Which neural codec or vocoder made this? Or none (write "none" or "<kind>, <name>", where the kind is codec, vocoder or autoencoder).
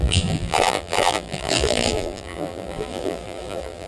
vocoder, BigVGAN v2